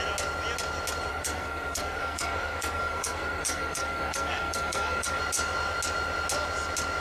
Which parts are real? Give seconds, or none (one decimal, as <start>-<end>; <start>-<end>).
0.0-1.1; 5.2-7.0